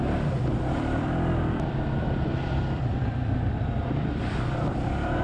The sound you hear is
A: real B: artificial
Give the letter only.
B